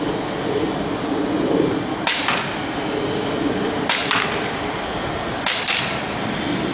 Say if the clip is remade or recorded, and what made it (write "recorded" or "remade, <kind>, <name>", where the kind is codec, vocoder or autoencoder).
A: recorded